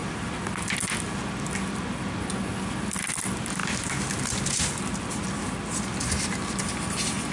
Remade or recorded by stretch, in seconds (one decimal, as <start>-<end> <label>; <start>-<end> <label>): 0.0-7.3 recorded